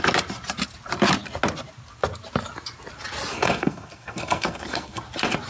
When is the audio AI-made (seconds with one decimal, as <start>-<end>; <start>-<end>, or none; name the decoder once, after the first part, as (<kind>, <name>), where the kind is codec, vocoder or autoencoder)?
3.3-5.0 (codec, SNAC)